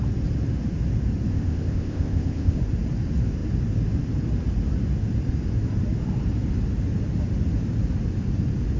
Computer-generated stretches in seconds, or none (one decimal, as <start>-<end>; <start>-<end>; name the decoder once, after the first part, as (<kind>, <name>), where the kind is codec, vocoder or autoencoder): 1.3-2.6 (codec, ZipCodec)